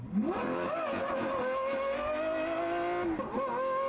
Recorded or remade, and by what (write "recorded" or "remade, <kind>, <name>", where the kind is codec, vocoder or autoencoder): recorded